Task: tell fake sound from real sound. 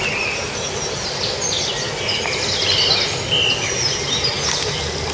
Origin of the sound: real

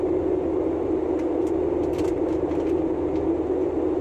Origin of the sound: real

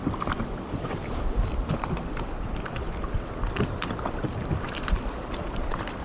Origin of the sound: fake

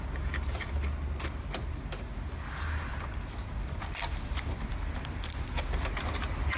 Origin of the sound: real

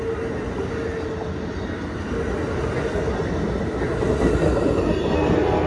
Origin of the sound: real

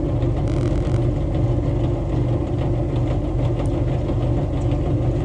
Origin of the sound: real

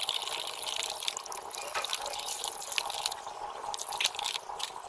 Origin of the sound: real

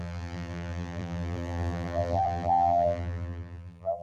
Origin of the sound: fake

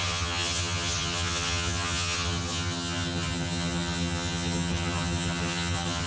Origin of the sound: fake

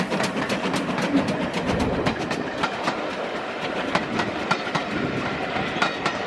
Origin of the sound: real